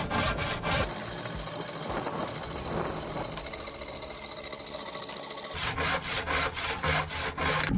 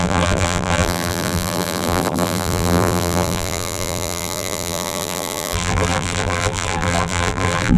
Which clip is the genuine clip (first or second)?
first